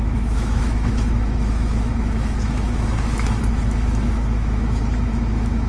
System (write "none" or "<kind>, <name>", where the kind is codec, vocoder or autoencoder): autoencoder, DAC-VAE